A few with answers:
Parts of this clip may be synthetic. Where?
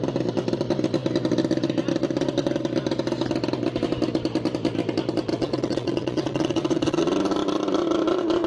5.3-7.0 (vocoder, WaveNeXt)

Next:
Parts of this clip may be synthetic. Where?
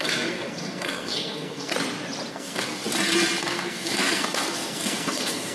0.0-1.7 (codec, SNAC); 2.3-2.8; 3.4-5.5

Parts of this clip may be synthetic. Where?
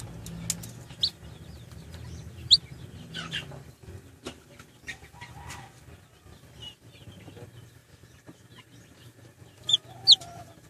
none